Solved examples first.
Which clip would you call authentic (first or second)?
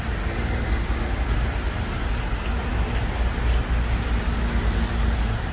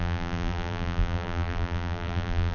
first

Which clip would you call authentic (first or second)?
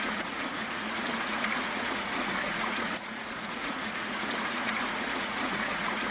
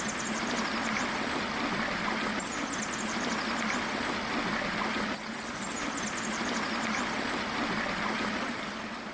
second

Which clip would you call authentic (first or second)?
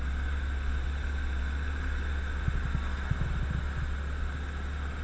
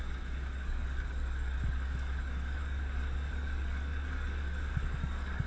first